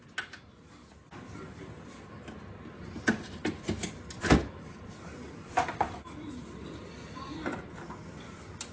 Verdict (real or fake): real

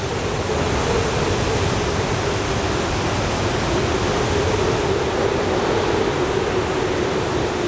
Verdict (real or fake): real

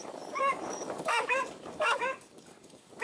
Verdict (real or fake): fake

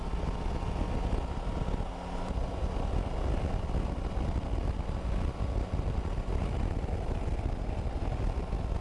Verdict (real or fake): real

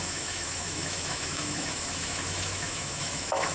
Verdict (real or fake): fake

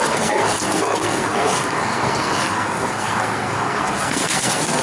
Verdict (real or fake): fake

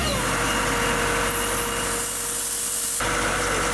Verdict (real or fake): real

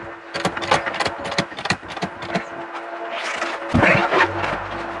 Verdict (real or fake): real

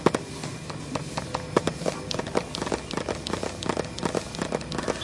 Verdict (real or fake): real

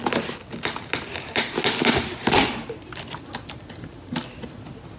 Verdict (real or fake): real